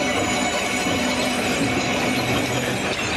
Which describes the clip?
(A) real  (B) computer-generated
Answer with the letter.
A